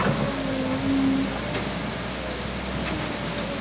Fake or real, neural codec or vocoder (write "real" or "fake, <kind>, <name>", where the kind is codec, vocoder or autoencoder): real